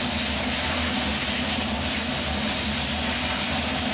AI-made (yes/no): no